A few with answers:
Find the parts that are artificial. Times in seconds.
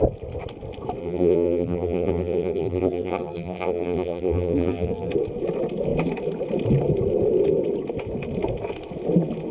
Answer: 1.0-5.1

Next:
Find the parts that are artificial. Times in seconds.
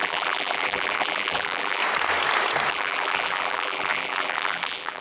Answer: 0.0-1.8; 2.7-5.0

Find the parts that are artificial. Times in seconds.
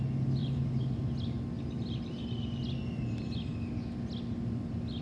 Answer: 0.4-1.0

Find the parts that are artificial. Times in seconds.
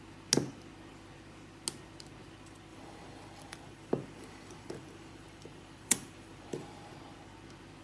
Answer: 2.7-6.9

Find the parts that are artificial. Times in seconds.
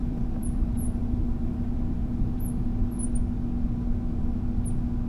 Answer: 0.0-3.1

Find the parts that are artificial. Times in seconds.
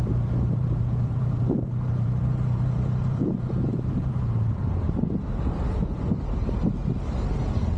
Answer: 0.0-4.7